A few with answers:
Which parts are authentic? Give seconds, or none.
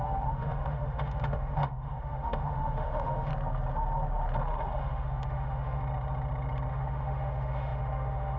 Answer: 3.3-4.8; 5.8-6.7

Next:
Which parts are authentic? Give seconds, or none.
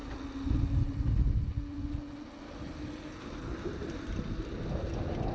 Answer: 0.0-5.3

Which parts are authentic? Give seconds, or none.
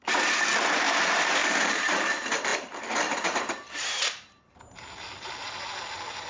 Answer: 0.0-1.4; 2.1-2.5; 4.5-6.3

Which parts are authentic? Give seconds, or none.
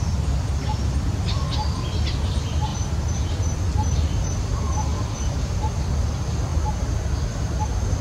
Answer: 0.0-2.7; 3.3-4.9; 6.1-8.0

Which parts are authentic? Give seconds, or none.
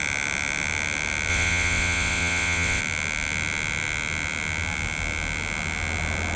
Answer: 0.0-1.3; 2.8-6.4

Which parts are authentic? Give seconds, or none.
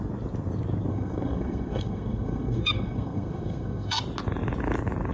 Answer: 0.0-0.9; 4.0-5.1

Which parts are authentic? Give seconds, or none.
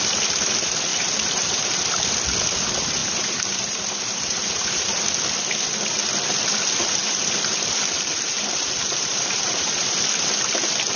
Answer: 0.0-0.9; 2.0-3.0; 5.2-7.0; 10.0-11.0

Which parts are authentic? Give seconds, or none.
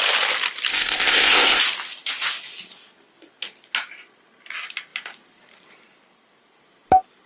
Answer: 0.0-0.7; 1.6-7.3